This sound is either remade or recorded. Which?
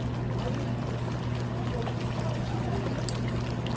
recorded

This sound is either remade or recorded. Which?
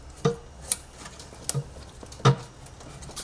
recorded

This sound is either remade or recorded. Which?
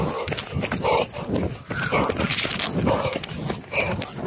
recorded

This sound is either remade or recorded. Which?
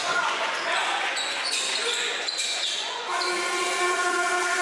remade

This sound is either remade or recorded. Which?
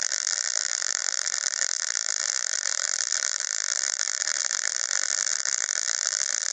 remade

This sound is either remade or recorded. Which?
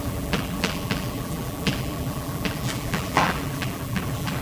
remade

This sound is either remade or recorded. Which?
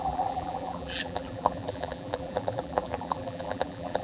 remade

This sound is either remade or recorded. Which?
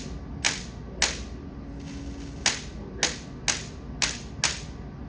recorded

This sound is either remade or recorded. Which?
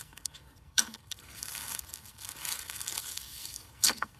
remade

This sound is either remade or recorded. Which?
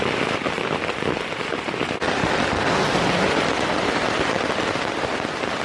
recorded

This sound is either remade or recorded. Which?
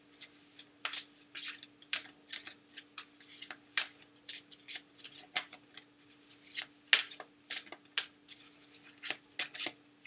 recorded